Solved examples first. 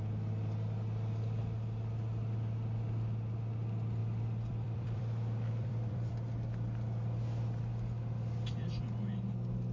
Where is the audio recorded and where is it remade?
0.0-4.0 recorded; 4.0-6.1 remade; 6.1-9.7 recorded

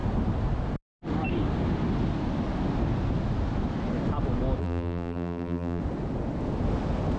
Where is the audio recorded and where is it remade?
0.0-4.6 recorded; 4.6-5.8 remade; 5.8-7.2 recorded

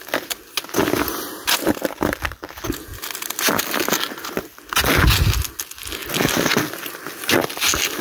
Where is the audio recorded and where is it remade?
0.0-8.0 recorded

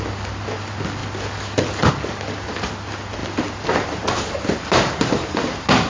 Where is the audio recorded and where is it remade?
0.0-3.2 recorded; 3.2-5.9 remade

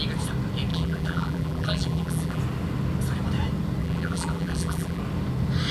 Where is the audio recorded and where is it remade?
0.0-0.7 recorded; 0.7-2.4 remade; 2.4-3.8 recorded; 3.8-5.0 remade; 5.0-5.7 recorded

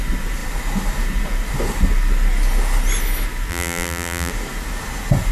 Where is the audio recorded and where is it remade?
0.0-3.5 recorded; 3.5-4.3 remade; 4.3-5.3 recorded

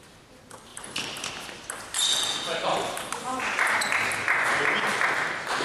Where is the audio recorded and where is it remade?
0.0-0.7 recorded; 0.7-1.3 remade; 1.3-2.7 recorded; 2.7-3.7 remade; 3.7-5.6 recorded